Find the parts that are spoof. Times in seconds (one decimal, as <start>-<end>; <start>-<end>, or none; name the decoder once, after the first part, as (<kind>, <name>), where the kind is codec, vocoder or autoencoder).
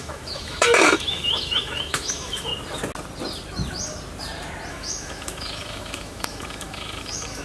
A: 0.0-2.5 (autoencoder, DAC-VAE); 4.7-7.4